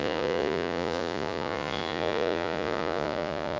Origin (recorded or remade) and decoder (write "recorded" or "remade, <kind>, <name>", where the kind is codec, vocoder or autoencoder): remade, vocoder, Vocos